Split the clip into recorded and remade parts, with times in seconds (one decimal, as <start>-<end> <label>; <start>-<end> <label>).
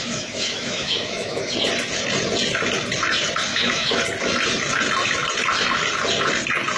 0.0-1.4 remade; 1.4-3.5 recorded; 3.5-4.0 remade; 4.0-6.8 recorded